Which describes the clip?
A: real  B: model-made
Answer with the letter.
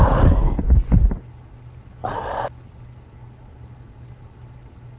A